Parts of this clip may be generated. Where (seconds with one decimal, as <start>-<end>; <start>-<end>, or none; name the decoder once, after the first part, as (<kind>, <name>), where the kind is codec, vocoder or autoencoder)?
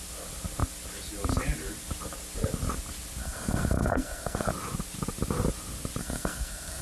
3.2-4.5 (codec, SNAC); 6.0-6.8